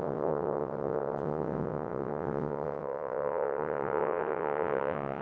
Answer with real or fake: fake